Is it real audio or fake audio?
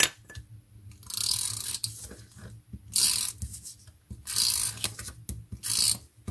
real